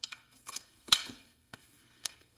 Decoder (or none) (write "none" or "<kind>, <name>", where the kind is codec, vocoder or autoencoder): codec, SNAC